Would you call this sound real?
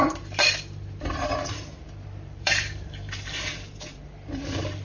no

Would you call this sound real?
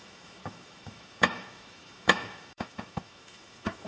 no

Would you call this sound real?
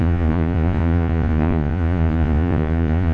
no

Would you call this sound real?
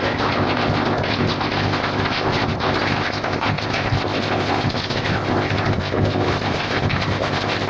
no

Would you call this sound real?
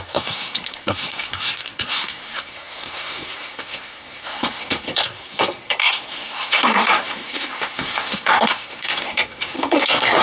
no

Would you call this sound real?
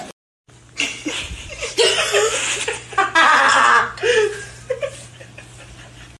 yes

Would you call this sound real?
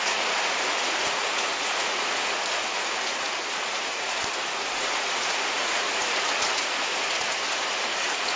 no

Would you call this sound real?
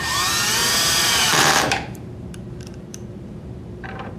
no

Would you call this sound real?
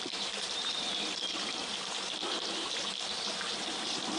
no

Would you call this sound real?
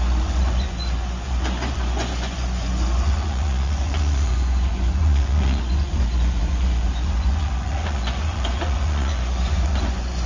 no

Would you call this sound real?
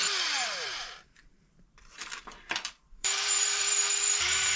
no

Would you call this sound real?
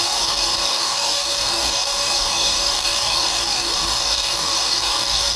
no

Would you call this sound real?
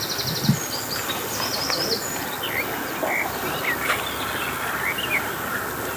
yes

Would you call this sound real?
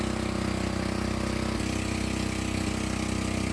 yes